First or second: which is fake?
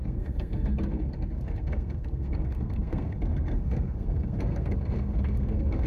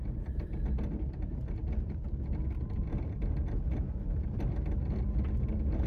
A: first